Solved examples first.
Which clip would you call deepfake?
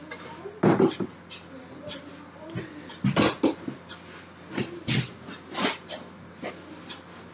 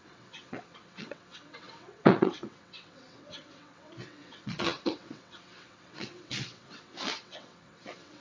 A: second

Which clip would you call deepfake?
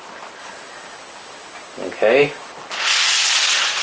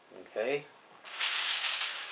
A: second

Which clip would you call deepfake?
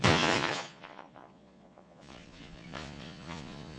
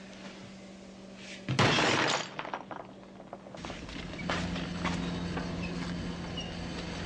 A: first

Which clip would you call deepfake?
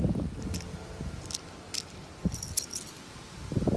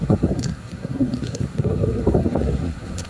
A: second